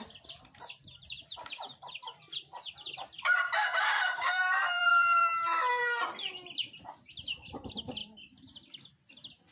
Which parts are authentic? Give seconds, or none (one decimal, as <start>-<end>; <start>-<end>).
8.0-9.5